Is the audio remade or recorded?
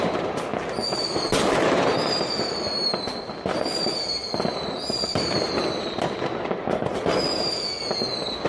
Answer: recorded